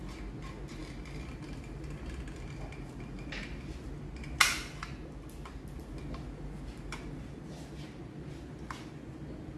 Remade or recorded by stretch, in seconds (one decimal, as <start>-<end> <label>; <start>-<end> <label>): 0.0-9.6 recorded